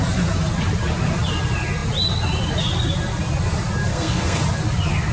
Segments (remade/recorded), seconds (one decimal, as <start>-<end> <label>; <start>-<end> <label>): 0.0-3.9 recorded; 3.9-4.4 remade; 4.4-5.1 recorded